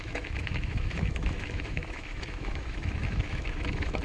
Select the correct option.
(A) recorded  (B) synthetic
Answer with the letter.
B